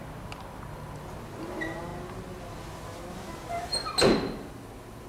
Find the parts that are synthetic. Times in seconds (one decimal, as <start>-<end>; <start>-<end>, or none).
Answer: none